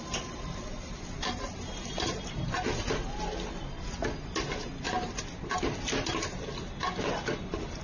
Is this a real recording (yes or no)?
yes